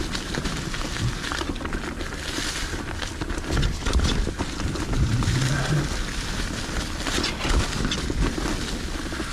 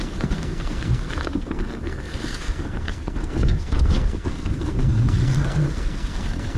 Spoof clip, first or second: second